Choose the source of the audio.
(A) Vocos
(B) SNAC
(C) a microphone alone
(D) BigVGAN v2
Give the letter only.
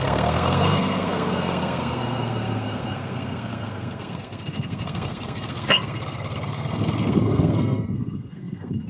B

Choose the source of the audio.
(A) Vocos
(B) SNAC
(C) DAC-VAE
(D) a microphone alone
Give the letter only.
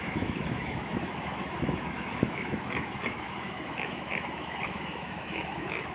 C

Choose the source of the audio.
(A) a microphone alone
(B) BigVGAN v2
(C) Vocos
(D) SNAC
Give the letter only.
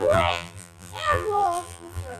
B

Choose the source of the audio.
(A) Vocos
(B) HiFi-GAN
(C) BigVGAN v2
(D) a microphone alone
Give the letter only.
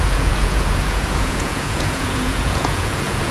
A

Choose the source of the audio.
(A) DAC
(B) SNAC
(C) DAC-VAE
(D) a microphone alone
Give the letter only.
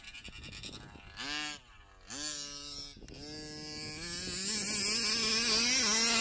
D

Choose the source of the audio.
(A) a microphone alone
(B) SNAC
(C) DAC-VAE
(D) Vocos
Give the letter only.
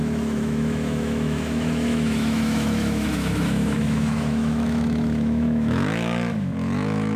C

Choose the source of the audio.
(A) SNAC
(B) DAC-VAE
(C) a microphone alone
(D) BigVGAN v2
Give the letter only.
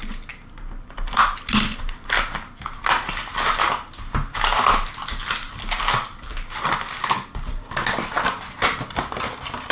C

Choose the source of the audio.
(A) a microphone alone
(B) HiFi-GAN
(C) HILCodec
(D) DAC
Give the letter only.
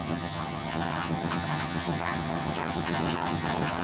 B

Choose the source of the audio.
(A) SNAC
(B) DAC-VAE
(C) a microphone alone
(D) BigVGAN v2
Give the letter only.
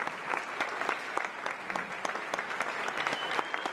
C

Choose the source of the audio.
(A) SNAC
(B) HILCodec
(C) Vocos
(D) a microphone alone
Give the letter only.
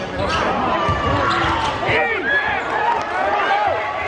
D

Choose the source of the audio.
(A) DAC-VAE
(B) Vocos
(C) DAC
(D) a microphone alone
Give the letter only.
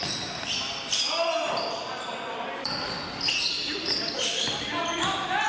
D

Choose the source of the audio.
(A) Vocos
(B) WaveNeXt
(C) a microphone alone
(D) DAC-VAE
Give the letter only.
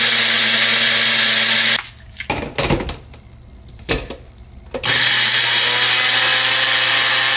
C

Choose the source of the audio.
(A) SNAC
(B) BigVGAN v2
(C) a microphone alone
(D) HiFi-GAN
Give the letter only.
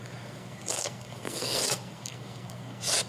A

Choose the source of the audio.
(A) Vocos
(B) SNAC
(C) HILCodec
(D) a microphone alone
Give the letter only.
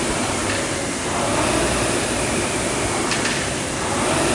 D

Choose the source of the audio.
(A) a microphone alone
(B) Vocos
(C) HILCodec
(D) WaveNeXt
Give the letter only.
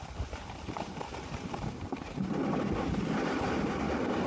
A